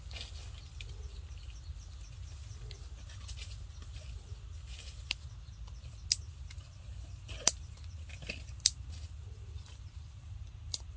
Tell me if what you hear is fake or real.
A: real